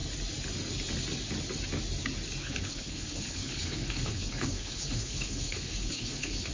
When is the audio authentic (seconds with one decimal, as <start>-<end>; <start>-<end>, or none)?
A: 0.0-2.4